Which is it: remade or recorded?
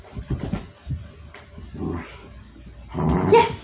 recorded